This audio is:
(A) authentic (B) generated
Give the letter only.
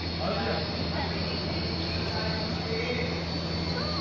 A